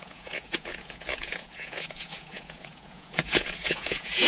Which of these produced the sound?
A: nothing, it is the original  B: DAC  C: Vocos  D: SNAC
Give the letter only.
C